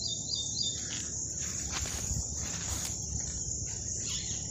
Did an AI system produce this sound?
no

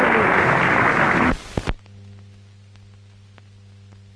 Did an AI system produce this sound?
no